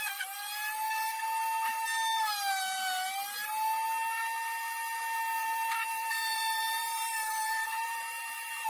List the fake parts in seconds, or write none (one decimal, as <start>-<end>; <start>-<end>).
5.4-8.7